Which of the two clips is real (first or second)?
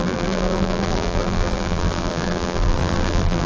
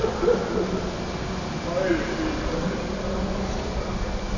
second